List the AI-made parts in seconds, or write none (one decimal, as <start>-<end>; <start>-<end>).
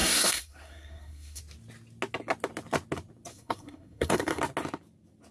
0.0-1.4; 3.3-4.4